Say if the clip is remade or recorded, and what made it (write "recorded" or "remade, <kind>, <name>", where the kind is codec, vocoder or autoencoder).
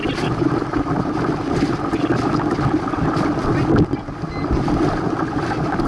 recorded